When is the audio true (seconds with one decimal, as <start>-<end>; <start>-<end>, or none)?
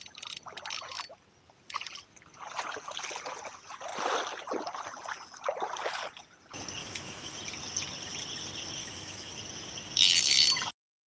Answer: 0.0-6.8; 7.4-8.8; 9.3-11.1